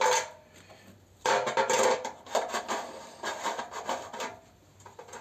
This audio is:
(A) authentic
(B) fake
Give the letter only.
B